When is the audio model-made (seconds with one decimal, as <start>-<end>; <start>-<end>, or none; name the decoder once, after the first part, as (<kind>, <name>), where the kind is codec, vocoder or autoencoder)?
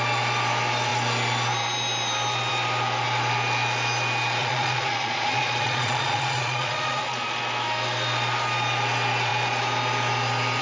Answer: 4.4-7.4 (vocoder, Vocos)